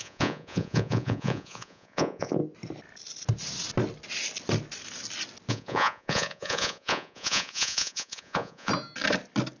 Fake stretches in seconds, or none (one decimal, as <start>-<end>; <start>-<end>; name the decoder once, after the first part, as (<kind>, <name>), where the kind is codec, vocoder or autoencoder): 0.0-2.4 (vocoder, Vocos); 5.5-8.7